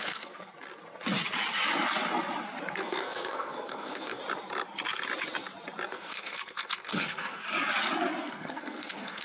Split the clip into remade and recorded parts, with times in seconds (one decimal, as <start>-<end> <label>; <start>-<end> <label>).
0.0-0.5 remade; 0.5-2.7 recorded; 2.7-4.2 remade; 4.2-5.9 recorded; 5.9-7.4 remade; 7.4-8.2 recorded; 8.2-9.2 remade